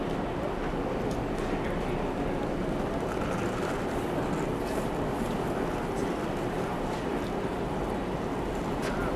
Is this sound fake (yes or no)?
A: no